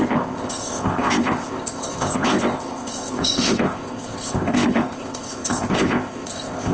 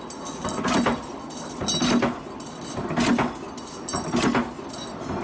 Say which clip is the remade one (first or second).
first